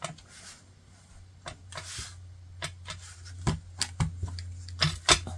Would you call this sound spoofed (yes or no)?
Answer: no